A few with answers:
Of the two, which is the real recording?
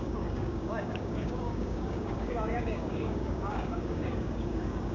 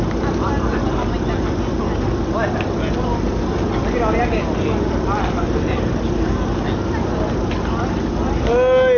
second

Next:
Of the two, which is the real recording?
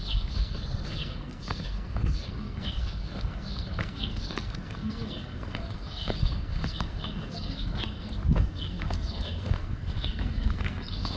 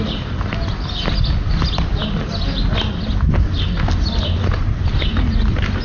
second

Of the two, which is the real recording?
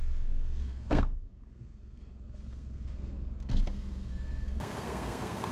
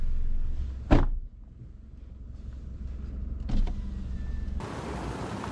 second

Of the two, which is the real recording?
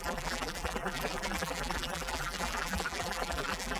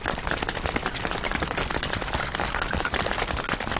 second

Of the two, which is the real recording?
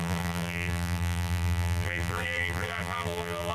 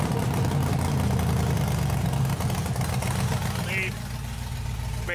second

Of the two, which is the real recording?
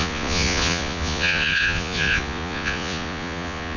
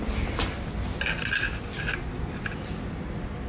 second